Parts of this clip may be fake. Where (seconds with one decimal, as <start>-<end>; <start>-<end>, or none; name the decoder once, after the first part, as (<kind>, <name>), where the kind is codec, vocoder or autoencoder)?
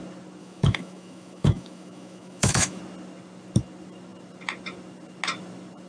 0.4-2.8 (autoencoder, DAC-VAE)